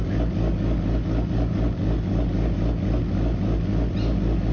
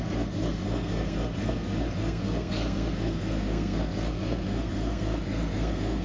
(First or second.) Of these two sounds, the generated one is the second